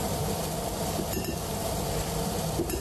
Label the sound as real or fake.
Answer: fake